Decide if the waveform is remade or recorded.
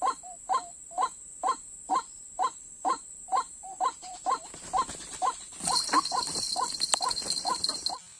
recorded